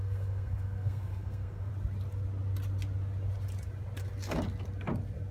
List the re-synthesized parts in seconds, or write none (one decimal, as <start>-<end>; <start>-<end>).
0.0-1.7